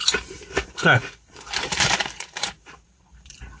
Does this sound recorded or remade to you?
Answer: remade